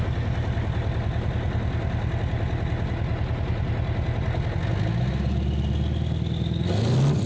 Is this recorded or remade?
recorded